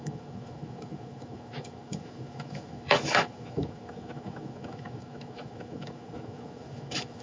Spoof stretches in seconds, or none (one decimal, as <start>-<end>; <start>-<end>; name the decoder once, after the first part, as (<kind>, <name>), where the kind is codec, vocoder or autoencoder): 0.0-7.2 (autoencoder, DAC-VAE)